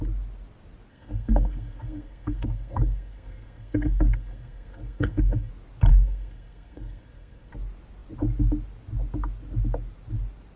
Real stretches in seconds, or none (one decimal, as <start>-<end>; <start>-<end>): 0.0-0.9; 5.5-5.9; 7.5-10.6